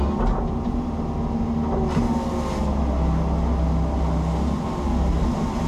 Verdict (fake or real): real